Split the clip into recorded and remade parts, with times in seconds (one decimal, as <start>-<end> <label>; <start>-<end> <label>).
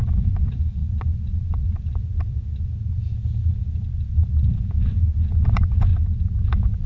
0.0-0.8 remade; 0.8-4.6 recorded; 4.6-5.9 remade; 5.9-6.5 recorded; 6.5-6.9 remade